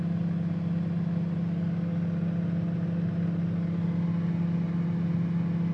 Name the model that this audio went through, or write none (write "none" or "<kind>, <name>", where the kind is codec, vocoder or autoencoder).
none